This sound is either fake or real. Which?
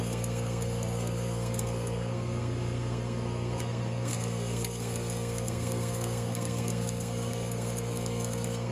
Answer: fake